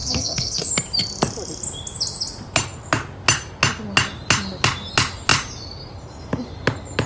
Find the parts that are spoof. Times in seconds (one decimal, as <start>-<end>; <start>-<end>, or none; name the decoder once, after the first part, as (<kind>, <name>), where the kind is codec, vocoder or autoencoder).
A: 0.0-0.7 (codec, SNAC)